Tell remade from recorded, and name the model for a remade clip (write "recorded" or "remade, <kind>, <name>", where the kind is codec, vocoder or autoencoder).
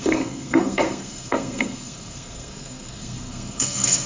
remade, codec, SNAC